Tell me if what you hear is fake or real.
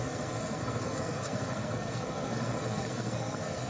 fake